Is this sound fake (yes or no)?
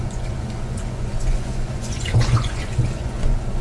yes